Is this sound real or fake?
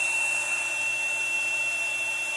real